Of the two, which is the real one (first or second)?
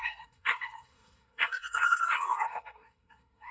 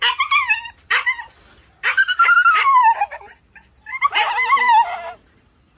second